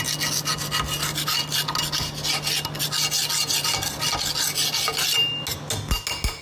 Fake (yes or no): no